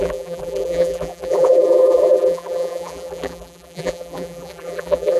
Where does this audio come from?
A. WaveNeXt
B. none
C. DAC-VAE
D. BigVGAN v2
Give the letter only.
D